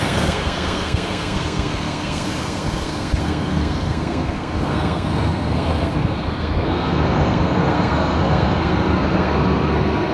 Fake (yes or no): yes